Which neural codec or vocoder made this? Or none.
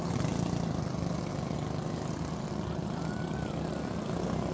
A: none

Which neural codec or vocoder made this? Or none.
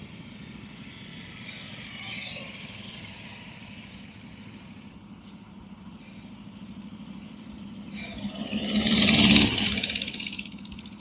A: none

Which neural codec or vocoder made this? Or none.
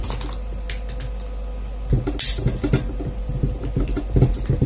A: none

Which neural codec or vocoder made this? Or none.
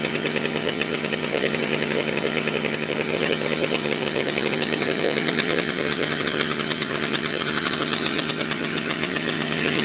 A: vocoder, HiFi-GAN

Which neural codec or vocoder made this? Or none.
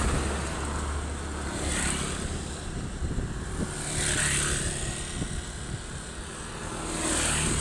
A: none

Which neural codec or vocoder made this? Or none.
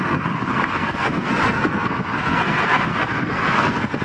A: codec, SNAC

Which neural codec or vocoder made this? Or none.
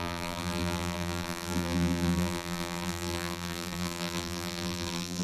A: vocoder, BigVGAN v2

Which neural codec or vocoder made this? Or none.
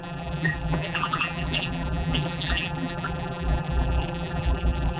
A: vocoder, BigVGAN v2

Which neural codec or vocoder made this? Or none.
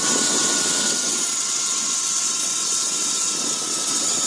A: vocoder, WaveNeXt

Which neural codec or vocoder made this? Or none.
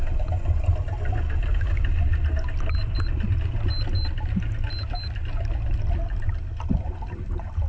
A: none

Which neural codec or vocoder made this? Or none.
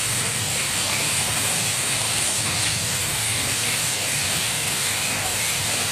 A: codec, DAC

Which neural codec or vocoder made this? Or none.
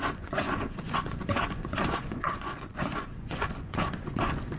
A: vocoder, Vocos